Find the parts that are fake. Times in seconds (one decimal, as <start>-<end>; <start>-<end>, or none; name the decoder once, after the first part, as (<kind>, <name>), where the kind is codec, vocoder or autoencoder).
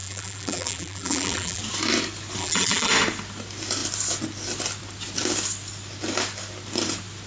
0.0-1.6 (vocoder, BigVGAN v2); 2.4-2.9